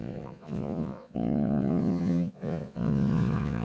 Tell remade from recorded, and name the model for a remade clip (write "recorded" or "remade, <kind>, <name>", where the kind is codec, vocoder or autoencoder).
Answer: remade, vocoder, Vocos